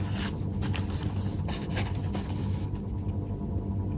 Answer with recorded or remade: recorded